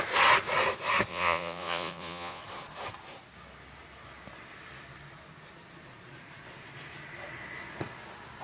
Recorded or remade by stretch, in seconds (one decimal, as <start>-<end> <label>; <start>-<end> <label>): 0.0-1.1 recorded; 1.1-2.4 remade; 2.4-8.4 recorded